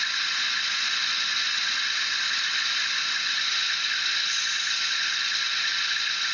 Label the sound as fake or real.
real